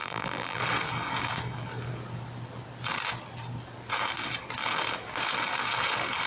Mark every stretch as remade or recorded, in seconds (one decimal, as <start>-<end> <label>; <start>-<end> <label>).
0.0-0.6 remade; 0.6-6.3 recorded